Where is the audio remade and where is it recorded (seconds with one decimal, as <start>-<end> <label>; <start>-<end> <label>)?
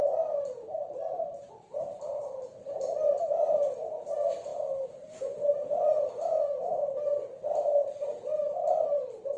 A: 0.0-9.4 remade